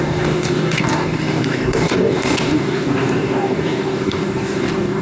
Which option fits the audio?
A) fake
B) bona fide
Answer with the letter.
A